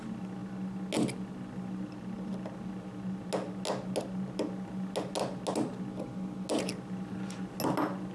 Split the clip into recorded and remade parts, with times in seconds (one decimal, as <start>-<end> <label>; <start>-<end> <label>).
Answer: 0.0-8.1 recorded